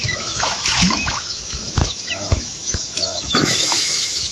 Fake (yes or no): yes